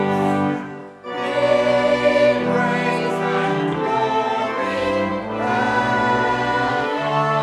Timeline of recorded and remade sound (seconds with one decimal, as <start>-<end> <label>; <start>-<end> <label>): 0.0-0.8 remade; 0.8-3.1 recorded; 3.1-5.1 remade; 5.1-6.7 recorded; 6.7-7.4 remade